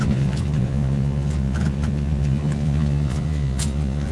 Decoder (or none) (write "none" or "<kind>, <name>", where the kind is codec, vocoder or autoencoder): vocoder, Vocos